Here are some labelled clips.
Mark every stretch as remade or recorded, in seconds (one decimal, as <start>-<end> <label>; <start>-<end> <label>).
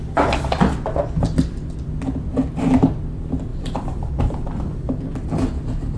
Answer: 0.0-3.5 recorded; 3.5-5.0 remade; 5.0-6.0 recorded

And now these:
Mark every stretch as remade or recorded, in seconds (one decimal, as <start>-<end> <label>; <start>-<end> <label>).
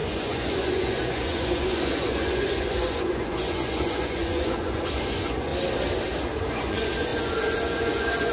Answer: 0.0-5.5 remade; 5.5-6.5 recorded; 6.5-8.3 remade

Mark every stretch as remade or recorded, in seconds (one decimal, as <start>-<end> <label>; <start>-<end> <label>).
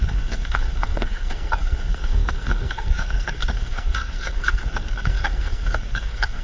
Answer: 0.0-6.4 remade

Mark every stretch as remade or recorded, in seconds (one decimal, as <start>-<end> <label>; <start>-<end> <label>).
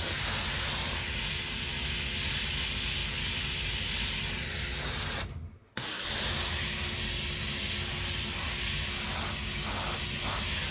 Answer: 0.0-10.7 recorded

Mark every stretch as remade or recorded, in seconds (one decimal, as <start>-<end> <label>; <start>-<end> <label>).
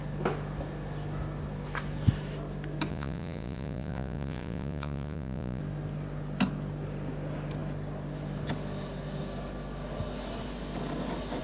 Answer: 0.0-2.9 recorded; 2.9-5.6 remade; 5.6-11.4 recorded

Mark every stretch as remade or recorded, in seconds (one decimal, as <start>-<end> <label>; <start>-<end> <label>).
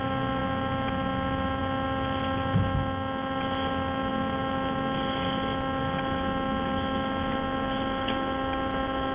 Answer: 0.0-9.1 recorded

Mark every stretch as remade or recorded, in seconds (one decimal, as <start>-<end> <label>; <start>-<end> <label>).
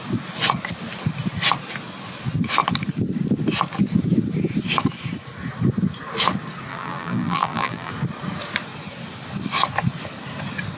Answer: 0.0-6.7 recorded; 6.7-7.9 remade; 7.9-10.8 recorded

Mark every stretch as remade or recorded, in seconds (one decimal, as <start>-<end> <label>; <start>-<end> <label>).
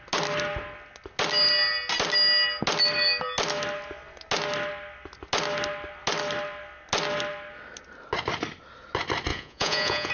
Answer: 0.0-9.3 recorded; 9.3-10.1 remade